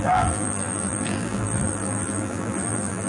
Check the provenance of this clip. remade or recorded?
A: remade